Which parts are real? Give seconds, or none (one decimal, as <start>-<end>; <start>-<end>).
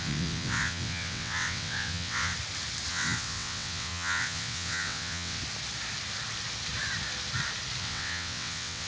2.3-2.9; 5.4-7.8